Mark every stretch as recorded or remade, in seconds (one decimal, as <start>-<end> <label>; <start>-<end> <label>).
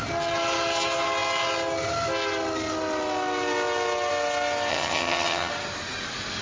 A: 0.0-4.7 recorded; 4.7-5.5 remade; 5.5-6.4 recorded